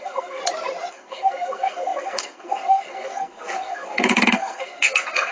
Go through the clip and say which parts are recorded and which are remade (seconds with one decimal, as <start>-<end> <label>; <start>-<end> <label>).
0.0-0.4 remade; 0.4-0.9 recorded; 0.9-5.3 remade